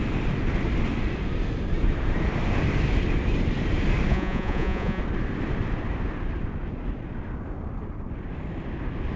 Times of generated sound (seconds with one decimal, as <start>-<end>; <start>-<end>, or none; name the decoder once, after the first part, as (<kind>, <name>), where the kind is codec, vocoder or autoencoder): 4.1-5.0 (vocoder, Vocos)